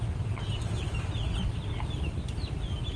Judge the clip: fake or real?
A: real